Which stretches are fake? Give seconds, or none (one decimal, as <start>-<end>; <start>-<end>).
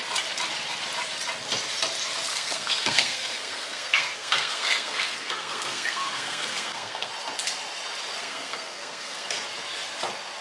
2.3-7.1; 8.2-9.3